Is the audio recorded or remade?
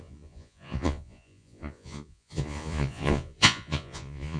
remade